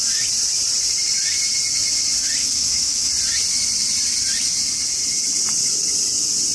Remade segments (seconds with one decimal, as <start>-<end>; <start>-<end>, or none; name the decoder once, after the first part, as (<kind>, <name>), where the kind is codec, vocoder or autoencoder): 2.4-3.1 (autoencoder, DAC-VAE)